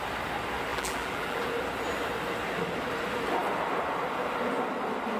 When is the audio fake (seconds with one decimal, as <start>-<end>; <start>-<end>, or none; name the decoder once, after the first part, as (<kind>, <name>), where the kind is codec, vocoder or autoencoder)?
0.7-1.4 (vocoder, BigVGAN v2)